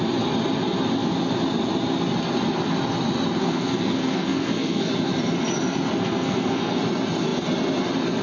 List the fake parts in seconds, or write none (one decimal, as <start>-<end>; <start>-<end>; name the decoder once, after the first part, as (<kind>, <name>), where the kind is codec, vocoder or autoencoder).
3.4-4.9 (codec, SNAC); 6.0-6.8